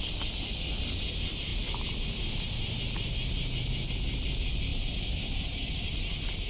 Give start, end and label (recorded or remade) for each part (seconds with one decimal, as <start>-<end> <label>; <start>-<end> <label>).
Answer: 0.0-6.5 recorded